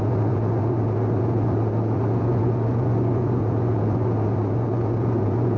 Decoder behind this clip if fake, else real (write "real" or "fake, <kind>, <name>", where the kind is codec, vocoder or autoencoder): fake, vocoder, Vocos